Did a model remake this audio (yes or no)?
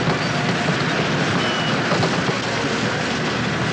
no